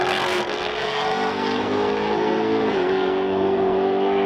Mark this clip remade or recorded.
remade